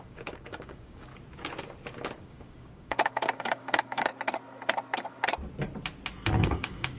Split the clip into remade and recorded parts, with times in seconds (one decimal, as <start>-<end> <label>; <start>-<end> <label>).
0.0-1.1 remade; 1.1-2.2 recorded; 2.2-4.1 remade; 4.1-6.4 recorded; 6.4-7.0 remade